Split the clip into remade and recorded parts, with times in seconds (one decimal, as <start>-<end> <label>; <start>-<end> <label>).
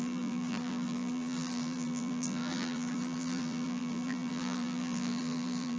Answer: 0.0-5.8 remade